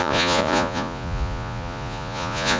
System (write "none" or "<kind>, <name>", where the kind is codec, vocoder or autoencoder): vocoder, Vocos